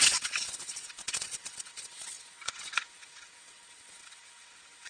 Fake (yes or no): yes